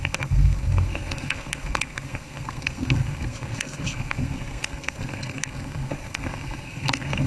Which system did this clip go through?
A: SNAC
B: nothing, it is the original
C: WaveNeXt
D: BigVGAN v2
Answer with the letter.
A